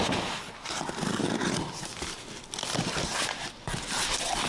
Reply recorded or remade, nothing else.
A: recorded